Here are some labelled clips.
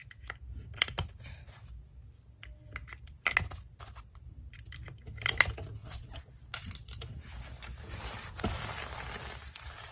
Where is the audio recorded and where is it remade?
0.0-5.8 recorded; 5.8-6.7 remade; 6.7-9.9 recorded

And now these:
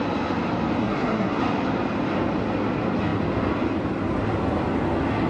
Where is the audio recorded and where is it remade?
0.0-0.8 recorded; 0.8-1.4 remade; 1.4-5.3 recorded

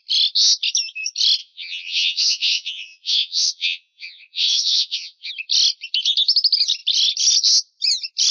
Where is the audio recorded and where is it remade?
0.0-1.4 recorded; 1.4-5.3 remade; 5.3-8.3 recorded

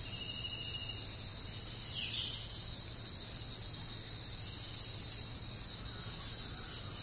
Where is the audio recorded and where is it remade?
0.0-7.0 recorded

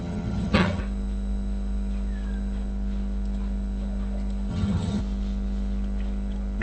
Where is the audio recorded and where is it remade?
0.0-0.8 remade; 0.8-4.5 recorded; 4.5-5.0 remade; 5.0-6.6 recorded

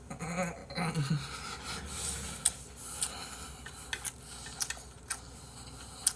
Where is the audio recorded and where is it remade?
0.0-6.2 recorded

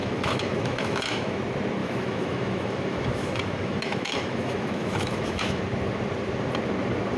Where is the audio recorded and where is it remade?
0.0-1.4 remade; 1.4-1.8 recorded; 1.8-5.6 remade; 5.6-7.2 recorded

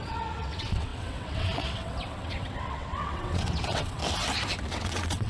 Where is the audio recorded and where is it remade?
0.0-4.0 remade; 4.0-4.7 recorded; 4.7-5.3 remade